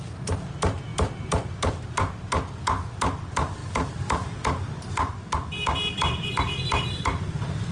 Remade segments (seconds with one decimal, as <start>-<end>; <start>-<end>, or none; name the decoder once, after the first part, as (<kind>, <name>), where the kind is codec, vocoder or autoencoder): 0.9-1.5 (vocoder, BigVGAN v2); 3.6-7.7